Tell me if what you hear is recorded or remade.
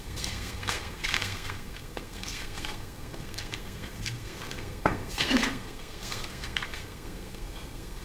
remade